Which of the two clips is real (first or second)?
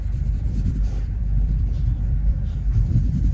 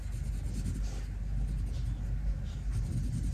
second